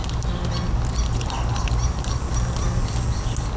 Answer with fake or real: real